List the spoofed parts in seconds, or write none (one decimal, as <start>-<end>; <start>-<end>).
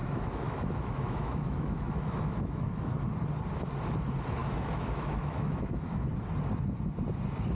0.0-3.0; 4.4-6.1